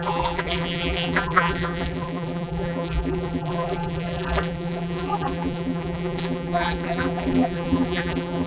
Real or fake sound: fake